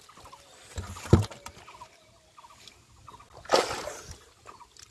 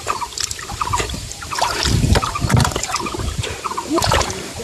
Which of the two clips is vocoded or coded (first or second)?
second